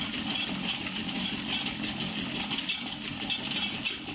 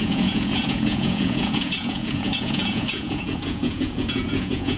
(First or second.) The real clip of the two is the first